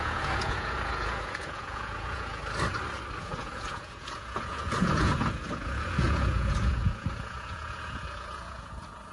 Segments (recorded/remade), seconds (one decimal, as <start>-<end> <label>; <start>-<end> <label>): 0.0-2.4 remade; 2.4-3.2 recorded; 3.2-9.1 remade